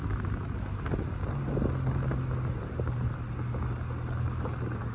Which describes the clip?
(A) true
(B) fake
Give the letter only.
A